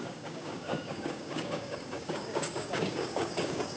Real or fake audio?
fake